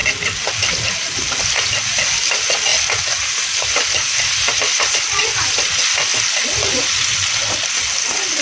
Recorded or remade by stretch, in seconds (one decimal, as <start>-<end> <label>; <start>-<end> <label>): 0.0-8.4 recorded